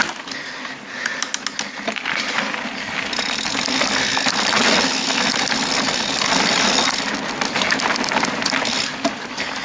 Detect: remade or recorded recorded